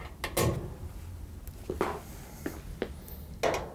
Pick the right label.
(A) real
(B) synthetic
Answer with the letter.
A